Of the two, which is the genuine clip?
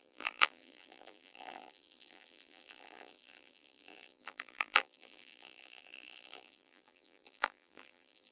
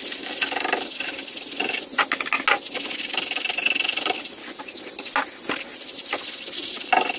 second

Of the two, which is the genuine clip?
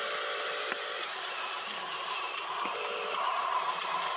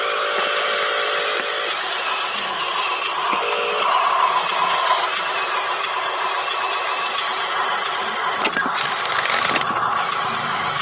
second